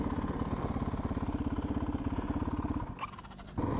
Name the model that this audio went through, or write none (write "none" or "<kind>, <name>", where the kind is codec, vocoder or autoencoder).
none